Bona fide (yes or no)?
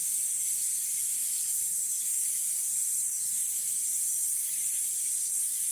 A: no